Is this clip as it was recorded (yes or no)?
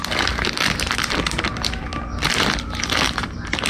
yes